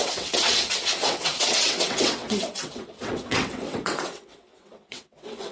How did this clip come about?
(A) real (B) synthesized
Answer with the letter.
B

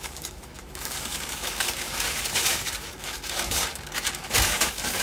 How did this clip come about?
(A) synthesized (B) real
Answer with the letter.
A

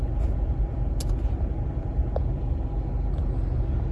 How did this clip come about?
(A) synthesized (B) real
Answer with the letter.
B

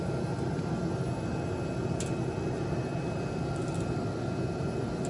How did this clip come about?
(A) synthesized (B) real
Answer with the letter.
B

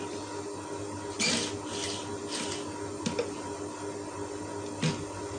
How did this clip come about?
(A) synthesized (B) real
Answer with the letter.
B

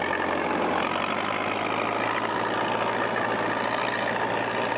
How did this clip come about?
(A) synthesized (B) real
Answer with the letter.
A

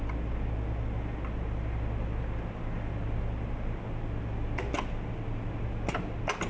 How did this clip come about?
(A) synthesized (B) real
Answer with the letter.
B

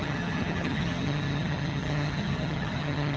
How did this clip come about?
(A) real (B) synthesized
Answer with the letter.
B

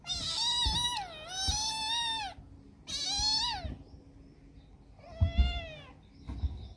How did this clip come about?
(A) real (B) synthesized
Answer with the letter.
A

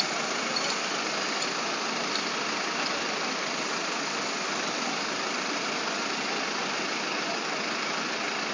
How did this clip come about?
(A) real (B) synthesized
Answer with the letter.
B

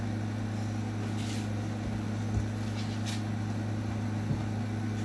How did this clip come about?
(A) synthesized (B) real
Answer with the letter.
B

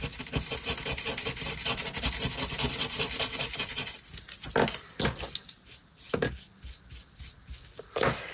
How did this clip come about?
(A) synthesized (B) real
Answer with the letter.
B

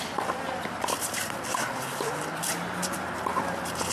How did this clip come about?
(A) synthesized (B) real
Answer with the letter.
B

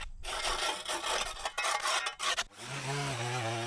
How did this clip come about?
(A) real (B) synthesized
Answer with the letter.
A